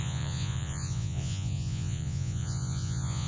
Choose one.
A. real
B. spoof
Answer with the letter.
B